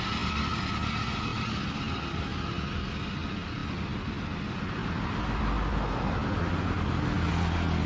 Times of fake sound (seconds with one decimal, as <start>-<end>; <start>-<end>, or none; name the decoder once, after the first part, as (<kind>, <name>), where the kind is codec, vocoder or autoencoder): none